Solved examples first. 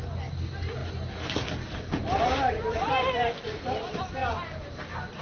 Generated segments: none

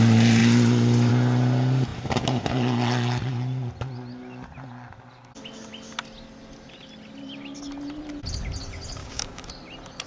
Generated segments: 9.0-9.5 (codec, DAC)

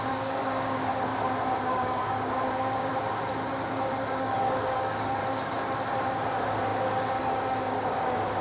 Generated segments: 0.0-0.9 (codec, DAC); 1.5-2.9; 3.7-5.2; 6.3-8.4